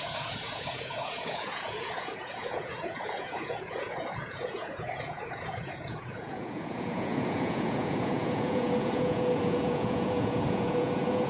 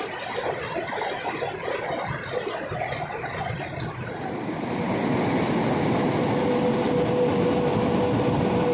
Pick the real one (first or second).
second